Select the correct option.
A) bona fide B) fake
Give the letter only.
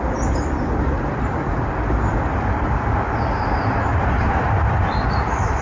B